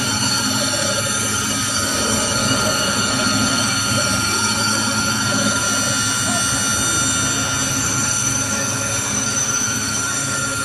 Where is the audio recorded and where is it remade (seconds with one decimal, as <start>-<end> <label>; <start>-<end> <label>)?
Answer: 0.0-5.6 remade; 5.6-7.7 recorded; 7.7-10.6 remade